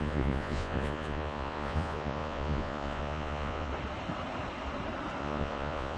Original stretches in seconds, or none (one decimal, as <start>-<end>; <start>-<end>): 3.7-5.2